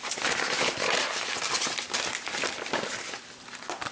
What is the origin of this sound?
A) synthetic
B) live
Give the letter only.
B